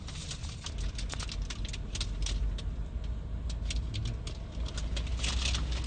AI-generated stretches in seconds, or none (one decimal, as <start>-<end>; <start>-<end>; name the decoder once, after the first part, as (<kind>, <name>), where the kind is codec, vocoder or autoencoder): none